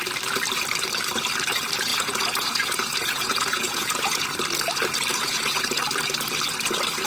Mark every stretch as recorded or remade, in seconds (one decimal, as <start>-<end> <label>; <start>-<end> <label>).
0.0-1.9 recorded; 1.9-4.3 remade; 4.3-5.1 recorded; 5.1-5.8 remade; 5.8-7.1 recorded